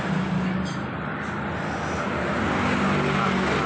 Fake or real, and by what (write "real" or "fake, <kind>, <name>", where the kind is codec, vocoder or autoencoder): real